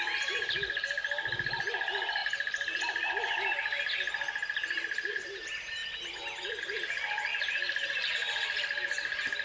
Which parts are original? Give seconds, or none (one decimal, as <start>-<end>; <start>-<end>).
0.0-9.4